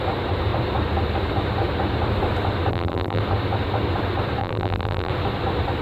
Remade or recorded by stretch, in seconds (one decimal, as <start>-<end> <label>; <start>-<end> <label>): 0.0-2.7 recorded; 2.7-3.2 remade; 3.2-4.4 recorded; 4.4-5.1 remade; 5.1-5.8 recorded